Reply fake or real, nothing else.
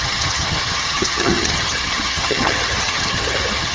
fake